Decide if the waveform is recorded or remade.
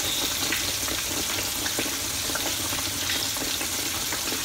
recorded